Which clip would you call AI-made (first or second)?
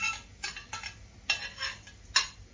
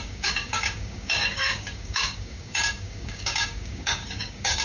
second